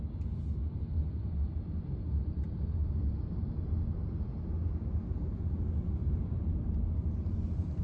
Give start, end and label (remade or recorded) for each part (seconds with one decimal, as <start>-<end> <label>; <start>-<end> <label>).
0.0-7.8 recorded